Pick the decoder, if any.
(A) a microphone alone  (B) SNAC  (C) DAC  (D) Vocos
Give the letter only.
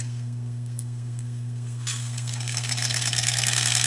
B